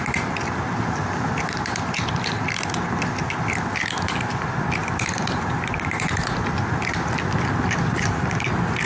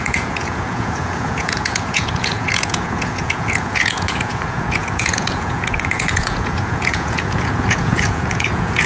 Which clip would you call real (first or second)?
first